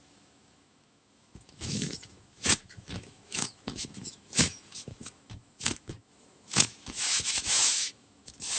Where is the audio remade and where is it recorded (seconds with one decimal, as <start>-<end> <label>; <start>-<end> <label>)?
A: 0.0-8.6 remade